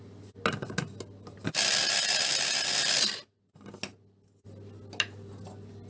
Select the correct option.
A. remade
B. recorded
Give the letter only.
B